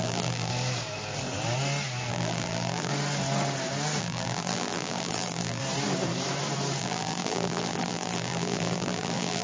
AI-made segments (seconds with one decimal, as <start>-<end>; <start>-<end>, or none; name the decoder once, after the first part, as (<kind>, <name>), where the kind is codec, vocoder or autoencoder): 0.0-0.5 (vocoder, BigVGAN v2); 2.1-2.9; 4.0-5.6; 6.8-9.4